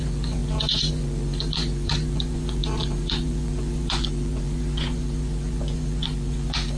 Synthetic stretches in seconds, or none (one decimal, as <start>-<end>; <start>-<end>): 0.0-6.8